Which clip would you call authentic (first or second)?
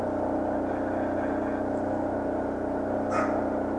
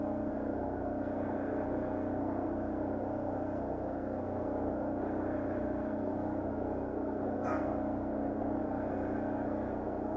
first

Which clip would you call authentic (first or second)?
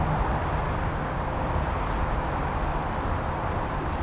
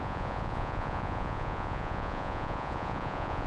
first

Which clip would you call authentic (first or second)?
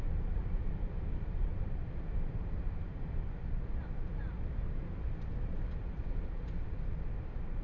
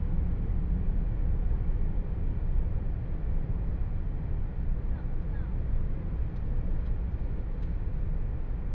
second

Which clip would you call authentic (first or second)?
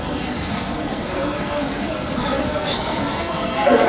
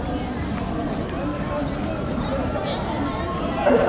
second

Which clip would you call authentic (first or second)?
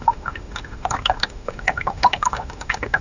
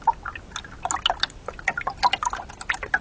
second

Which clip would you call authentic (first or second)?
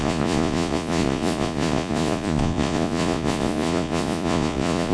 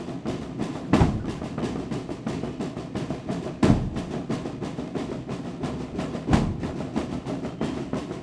second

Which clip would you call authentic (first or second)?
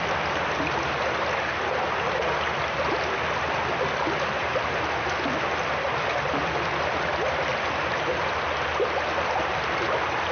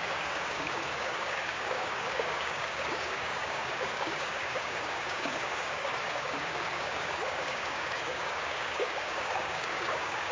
first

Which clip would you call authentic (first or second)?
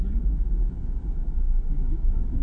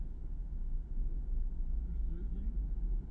second